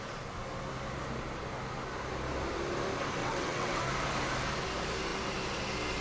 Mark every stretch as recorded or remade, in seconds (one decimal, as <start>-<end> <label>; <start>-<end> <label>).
0.0-3.2 recorded; 3.2-3.8 remade; 3.8-6.0 recorded